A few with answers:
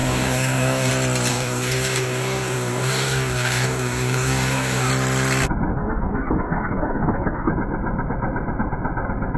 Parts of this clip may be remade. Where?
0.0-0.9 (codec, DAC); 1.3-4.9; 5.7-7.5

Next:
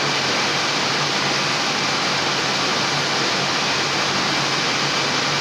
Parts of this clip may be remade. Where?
none

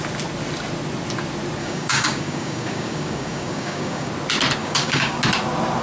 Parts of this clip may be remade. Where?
1.6-4.1 (codec, DAC); 4.6-5.2

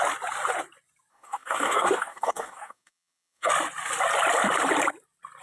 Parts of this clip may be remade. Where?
1.1-3.5 (codec, DAC)

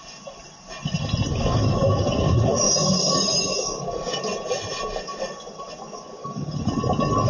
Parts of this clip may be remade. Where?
1.3-4.2 (codec, DAC); 6.2-6.7

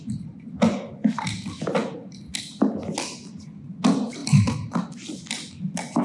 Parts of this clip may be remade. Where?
none